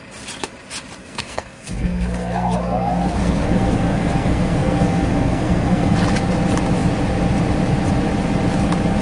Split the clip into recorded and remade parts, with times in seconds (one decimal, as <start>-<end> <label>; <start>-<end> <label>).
0.0-1.0 recorded; 1.0-6.0 remade; 6.0-9.0 recorded